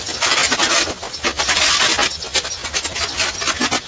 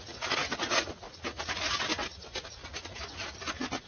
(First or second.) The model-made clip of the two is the second